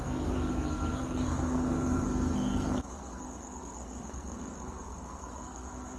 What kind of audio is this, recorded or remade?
remade